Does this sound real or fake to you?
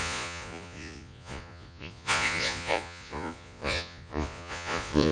fake